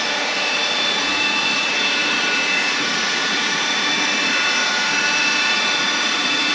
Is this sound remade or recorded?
remade